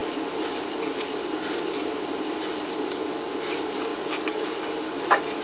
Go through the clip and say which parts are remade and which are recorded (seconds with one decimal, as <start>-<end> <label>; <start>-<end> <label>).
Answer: 0.0-3.9 recorded; 3.9-4.6 remade; 4.6-5.4 recorded